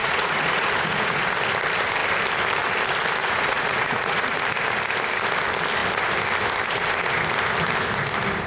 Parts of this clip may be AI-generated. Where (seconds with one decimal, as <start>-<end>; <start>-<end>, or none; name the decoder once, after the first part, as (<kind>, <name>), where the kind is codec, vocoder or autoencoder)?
0.0-1.2 (vocoder, Vocos); 3.2-4.4